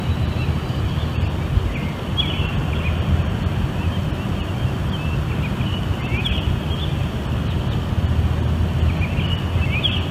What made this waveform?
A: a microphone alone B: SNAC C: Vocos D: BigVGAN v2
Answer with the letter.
A